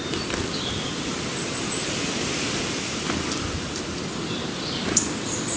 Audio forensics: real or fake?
fake